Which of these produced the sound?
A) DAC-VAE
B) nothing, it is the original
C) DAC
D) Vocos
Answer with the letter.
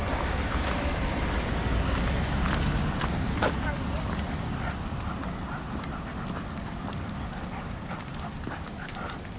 B